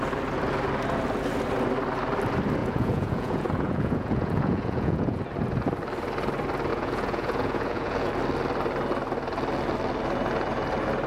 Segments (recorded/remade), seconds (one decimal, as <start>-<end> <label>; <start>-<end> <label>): 0.0-2.6 recorded; 2.6-5.2 remade; 5.2-6.7 recorded; 6.7-8.1 remade; 8.1-11.1 recorded

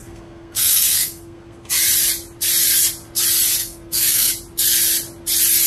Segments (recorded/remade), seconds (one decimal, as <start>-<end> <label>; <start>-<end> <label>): 0.0-1.7 remade; 1.7-3.6 recorded; 3.6-4.3 remade; 4.3-5.7 recorded

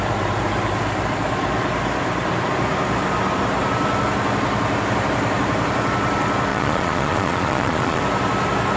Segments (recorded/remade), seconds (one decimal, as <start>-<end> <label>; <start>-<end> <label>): 0.0-6.5 recorded; 6.5-8.0 remade; 8.0-8.8 recorded

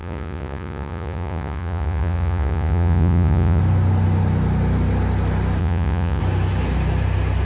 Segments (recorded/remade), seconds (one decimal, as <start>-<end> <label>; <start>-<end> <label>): 0.0-3.6 remade; 3.6-5.6 recorded; 5.6-6.2 remade; 6.2-7.4 recorded

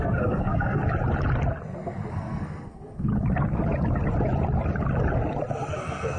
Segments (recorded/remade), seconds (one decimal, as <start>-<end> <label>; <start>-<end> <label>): 0.0-0.8 remade; 0.8-2.1 recorded; 2.1-3.1 remade; 3.1-5.7 recorded; 5.7-6.2 remade

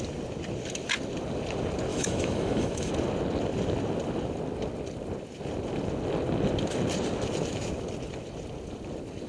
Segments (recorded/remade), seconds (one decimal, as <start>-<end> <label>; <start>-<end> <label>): 0.0-1.9 recorded; 1.9-2.9 remade; 2.9-9.3 recorded

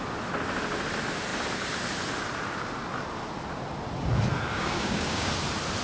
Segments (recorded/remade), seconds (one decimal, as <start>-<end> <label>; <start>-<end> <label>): 0.0-4.5 recorded; 4.5-5.3 remade; 5.3-5.8 recorded